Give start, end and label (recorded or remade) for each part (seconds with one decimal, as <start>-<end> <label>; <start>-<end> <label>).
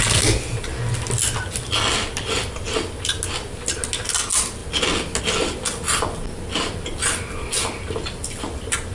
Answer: 0.0-8.9 recorded